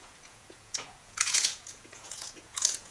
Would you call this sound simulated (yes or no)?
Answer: yes